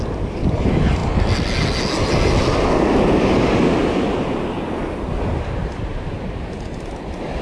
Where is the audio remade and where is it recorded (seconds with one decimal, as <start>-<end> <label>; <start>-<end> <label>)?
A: 0.0-5.8 recorded; 5.8-6.7 remade; 6.7-7.4 recorded